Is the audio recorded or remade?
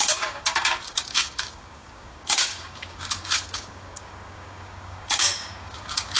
remade